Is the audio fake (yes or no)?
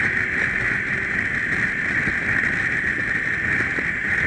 no